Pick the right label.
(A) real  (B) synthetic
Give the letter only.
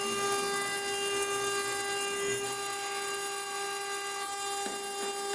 A